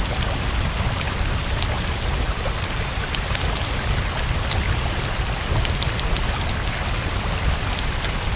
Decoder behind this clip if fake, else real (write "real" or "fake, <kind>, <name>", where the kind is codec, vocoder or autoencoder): real